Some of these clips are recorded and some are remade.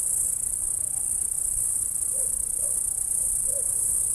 remade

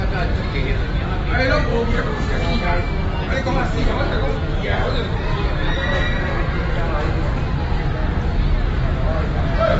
recorded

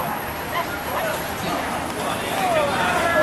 recorded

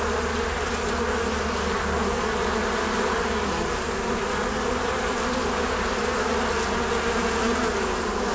recorded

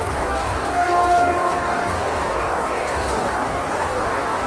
remade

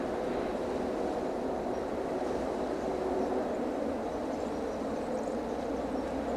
recorded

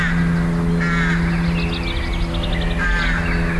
recorded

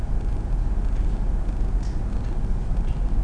recorded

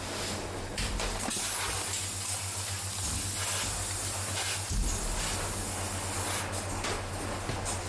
recorded